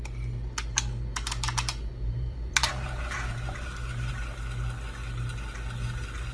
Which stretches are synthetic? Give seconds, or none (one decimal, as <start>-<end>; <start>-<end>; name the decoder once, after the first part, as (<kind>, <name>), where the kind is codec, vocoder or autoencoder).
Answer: 1.9-4.1 (vocoder, BigVGAN v2)